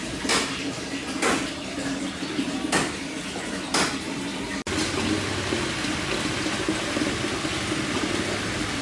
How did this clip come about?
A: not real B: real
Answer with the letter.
B